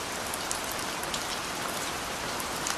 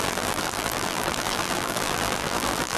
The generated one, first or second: second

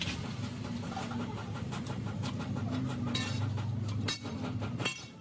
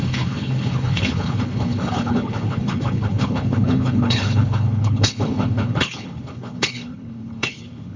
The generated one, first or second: second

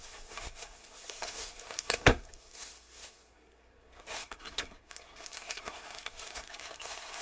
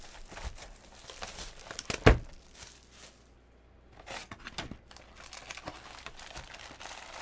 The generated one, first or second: first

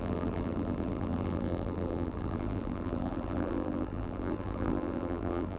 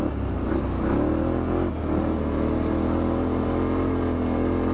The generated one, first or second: first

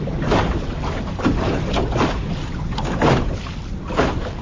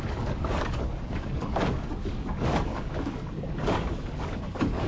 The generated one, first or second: second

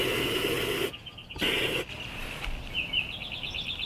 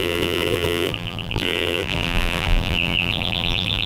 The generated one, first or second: second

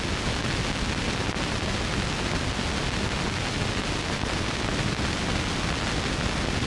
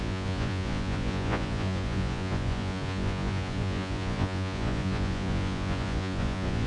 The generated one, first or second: second